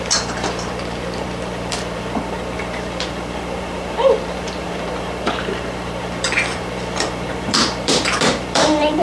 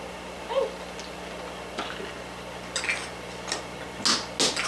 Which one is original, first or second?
second